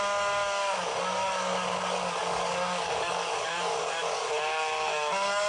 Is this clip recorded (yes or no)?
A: no